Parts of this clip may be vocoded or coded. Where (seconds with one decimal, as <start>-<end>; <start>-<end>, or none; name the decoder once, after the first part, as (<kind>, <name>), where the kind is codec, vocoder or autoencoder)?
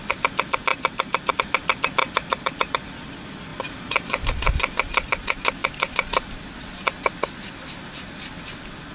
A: 0.7-1.3 (vocoder, BigVGAN v2); 2.0-2.5; 3.5-4.3